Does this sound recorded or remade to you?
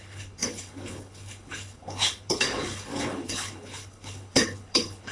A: remade